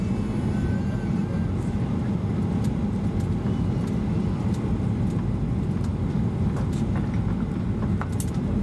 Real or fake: real